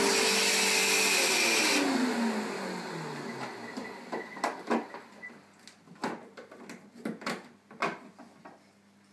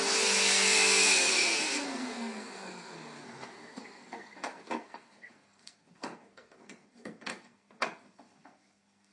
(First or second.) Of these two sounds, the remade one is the second